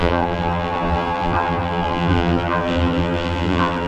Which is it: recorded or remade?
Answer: remade